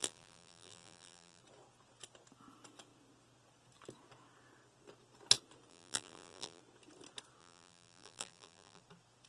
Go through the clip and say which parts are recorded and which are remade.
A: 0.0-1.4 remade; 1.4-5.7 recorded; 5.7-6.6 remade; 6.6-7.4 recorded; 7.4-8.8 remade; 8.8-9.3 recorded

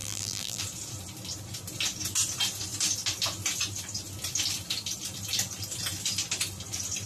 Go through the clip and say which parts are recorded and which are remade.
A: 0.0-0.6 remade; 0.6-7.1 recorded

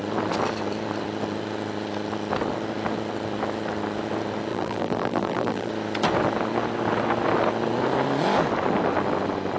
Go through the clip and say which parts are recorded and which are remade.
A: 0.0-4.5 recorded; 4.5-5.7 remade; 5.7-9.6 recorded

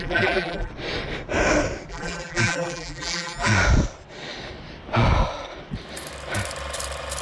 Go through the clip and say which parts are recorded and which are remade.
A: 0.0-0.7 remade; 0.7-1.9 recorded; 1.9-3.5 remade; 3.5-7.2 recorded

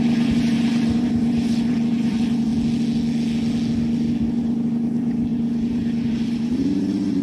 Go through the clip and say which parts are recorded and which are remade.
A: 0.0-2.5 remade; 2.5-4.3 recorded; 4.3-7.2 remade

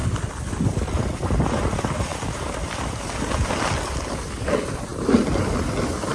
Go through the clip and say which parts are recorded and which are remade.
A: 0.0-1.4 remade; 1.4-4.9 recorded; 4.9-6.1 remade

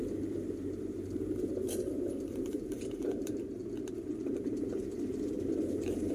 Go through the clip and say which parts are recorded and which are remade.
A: 0.0-3.6 remade; 3.6-4.3 recorded; 4.3-6.1 remade

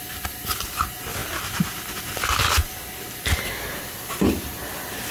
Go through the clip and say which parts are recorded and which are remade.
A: 0.0-5.1 recorded